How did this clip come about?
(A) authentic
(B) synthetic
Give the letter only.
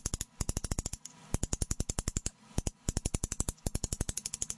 A